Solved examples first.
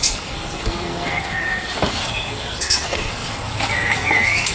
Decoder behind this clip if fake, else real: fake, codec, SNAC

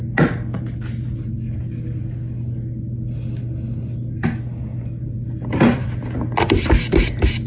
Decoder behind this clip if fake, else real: real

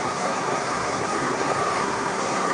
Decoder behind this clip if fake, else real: fake, codec, SNAC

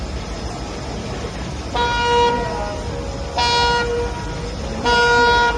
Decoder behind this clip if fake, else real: real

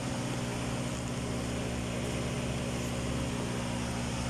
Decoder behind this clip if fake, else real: real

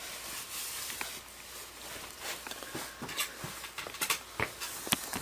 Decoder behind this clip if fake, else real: real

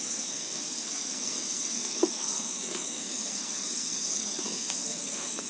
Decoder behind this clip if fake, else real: fake, codec, SNAC